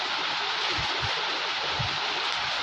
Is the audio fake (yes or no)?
no